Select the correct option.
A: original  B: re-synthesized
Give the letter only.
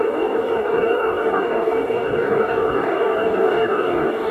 B